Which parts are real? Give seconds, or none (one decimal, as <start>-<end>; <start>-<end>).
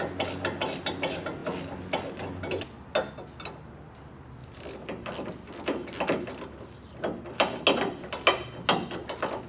0.0-9.5